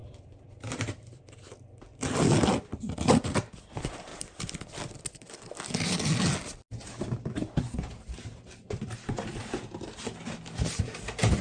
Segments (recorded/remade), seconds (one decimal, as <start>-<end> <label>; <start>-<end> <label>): 0.0-1.5 remade; 1.5-11.4 recorded